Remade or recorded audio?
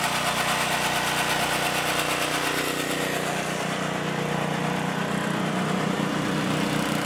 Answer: recorded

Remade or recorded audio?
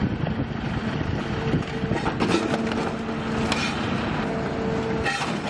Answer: recorded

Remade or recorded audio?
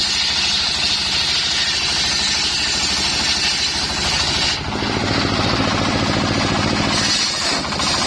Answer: recorded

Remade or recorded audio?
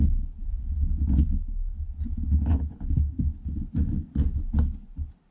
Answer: recorded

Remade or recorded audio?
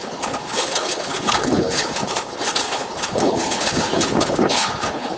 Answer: remade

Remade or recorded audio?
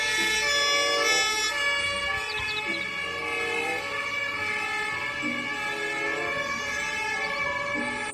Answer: recorded